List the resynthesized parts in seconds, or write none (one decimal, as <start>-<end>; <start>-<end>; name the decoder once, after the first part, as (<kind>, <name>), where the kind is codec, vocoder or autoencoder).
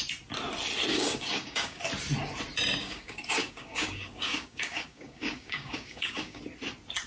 0.9-1.8 (codec, DAC); 2.8-6.4